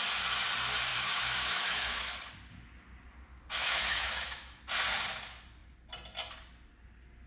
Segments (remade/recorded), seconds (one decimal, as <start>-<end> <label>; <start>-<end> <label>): 0.0-0.9 recorded; 0.9-2.1 remade; 2.1-3.6 recorded; 3.6-4.6 remade; 4.6-7.3 recorded